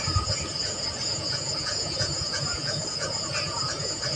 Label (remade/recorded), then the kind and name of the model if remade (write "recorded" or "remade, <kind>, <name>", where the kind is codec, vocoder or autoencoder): remade, vocoder, Vocos